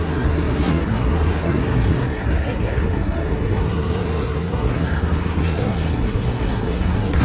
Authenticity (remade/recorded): remade